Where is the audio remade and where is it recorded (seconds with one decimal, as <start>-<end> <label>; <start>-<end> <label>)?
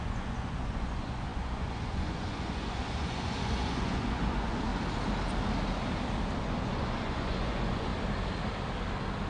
0.0-4.7 remade; 4.7-6.4 recorded; 6.4-7.9 remade; 7.9-9.3 recorded